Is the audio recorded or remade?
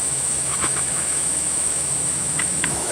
remade